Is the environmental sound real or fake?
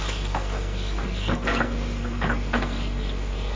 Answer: fake